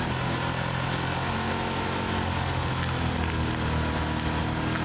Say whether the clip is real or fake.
real